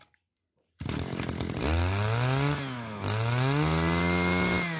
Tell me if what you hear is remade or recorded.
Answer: recorded